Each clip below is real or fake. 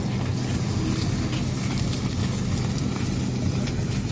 real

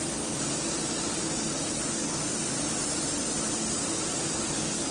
real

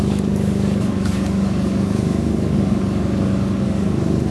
fake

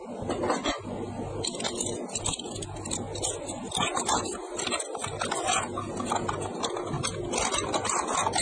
real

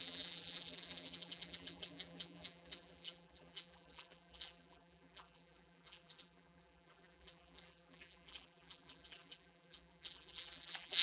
fake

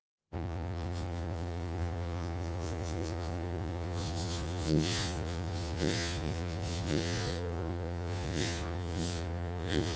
fake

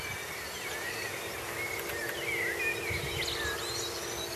real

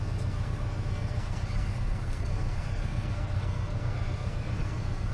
fake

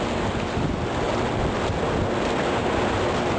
real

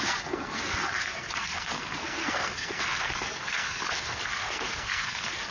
fake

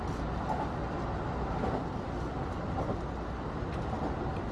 real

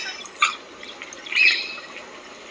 fake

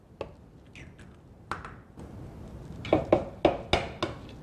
real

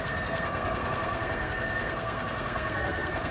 fake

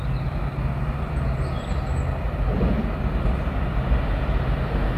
real